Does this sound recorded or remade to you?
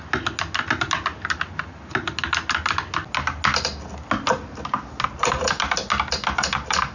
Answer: recorded